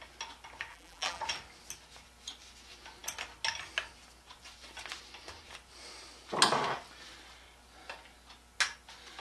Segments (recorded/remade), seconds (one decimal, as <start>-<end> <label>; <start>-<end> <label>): 0.0-0.7 recorded; 0.7-1.2 remade; 1.2-9.2 recorded